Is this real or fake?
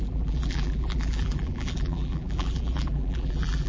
fake